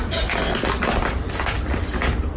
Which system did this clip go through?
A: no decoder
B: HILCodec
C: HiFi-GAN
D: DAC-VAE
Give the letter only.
A